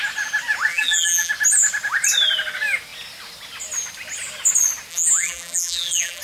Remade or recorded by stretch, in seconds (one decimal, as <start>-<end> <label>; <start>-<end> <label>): 0.0-0.7 recorded; 0.7-1.3 remade; 1.3-4.9 recorded; 4.9-6.2 remade